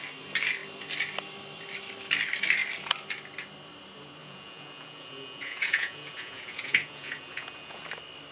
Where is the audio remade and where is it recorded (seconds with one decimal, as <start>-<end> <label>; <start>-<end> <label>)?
0.0-4.2 recorded; 4.2-7.8 remade; 7.8-8.3 recorded